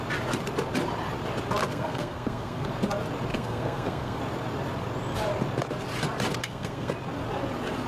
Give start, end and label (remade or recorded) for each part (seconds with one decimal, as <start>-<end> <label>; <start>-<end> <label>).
0.0-1.7 recorded; 1.7-2.7 remade; 2.7-3.3 recorded; 3.3-4.2 remade; 4.2-6.4 recorded; 6.4-6.9 remade; 6.9-7.9 recorded

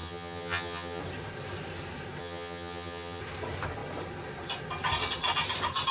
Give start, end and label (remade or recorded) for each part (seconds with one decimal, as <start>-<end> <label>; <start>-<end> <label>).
0.0-1.0 remade; 1.0-2.2 recorded; 2.2-3.2 remade; 3.2-5.9 recorded